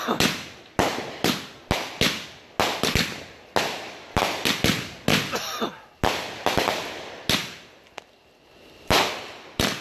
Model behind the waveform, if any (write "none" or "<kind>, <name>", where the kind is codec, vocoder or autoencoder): none